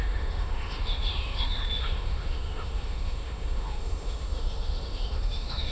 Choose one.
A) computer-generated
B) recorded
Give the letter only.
A